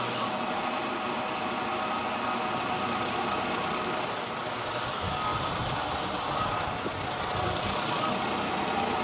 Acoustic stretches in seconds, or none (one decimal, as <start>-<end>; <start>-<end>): 0.0-9.0